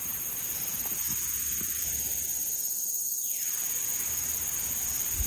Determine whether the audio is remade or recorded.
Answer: recorded